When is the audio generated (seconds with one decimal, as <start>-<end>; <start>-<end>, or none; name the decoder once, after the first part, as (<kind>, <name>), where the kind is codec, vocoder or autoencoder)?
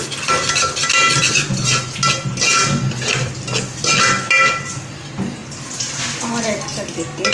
5.4-6.2 (vocoder, BigVGAN v2)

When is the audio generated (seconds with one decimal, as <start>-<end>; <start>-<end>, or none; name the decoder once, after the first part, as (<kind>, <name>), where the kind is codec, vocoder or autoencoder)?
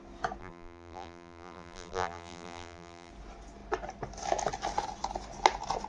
0.4-3.1 (vocoder, BigVGAN v2)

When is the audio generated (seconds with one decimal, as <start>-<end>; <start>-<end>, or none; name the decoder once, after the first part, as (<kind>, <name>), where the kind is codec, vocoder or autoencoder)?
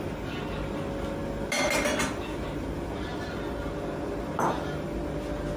none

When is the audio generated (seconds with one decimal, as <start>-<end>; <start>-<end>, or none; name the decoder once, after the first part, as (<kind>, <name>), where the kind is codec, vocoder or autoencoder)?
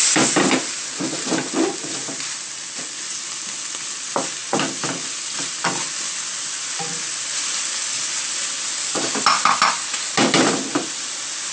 4.4-5.5 (vocoder, BigVGAN v2)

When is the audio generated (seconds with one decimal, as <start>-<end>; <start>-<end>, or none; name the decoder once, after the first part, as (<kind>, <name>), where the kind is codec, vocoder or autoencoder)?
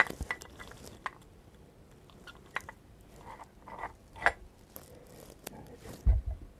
none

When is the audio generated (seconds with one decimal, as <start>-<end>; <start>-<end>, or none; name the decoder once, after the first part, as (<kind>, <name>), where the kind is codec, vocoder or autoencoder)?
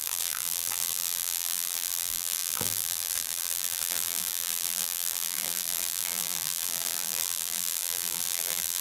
0.0-8.8 (vocoder, BigVGAN v2)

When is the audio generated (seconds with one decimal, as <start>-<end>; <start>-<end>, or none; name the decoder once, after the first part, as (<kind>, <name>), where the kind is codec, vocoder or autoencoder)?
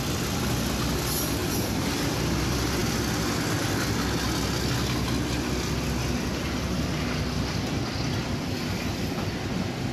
1.4-1.9 (vocoder, BigVGAN v2)